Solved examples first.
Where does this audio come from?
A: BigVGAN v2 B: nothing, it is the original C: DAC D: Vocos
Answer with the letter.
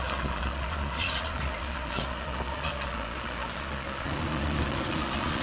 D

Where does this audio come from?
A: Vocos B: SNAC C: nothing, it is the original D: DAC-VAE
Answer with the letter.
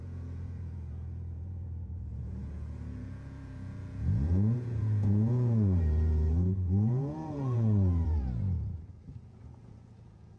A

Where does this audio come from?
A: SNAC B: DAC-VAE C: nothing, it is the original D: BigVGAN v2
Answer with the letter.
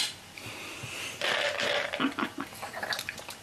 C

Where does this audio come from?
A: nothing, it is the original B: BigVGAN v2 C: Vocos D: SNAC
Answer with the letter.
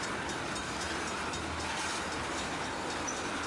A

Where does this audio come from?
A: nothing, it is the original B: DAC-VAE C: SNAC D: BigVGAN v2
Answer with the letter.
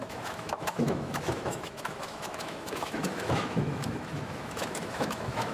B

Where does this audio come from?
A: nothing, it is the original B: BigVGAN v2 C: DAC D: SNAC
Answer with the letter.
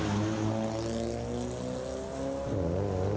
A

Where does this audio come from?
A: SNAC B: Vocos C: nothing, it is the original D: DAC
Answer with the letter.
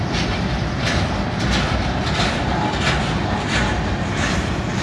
C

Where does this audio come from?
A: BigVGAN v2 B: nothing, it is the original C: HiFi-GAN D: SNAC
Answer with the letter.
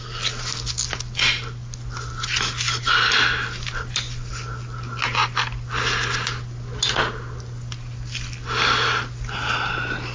B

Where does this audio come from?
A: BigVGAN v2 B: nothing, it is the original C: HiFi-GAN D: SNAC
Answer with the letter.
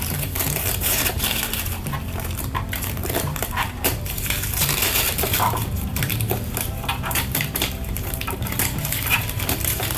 A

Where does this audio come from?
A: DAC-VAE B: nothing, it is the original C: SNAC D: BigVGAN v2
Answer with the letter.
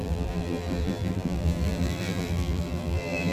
D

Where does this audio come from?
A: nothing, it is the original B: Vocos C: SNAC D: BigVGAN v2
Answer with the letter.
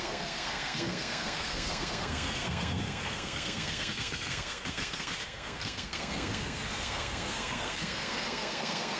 C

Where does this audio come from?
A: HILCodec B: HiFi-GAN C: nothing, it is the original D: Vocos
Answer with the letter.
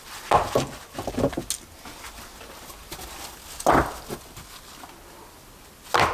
C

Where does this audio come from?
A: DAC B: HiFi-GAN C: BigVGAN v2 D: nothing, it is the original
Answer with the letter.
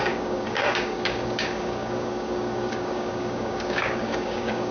A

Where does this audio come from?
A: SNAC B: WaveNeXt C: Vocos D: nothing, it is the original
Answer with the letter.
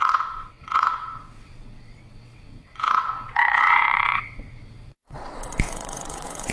B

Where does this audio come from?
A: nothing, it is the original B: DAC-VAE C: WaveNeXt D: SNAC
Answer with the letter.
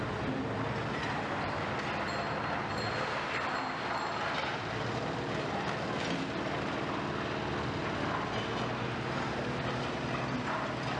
A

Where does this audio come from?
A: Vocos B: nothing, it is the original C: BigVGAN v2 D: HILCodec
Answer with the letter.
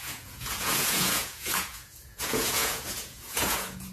A